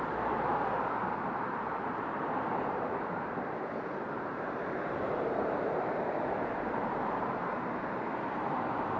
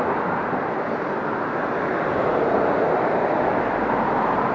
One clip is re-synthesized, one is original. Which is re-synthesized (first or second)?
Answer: first